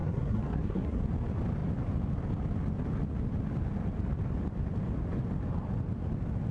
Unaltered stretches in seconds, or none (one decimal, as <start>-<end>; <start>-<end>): 1.0-6.5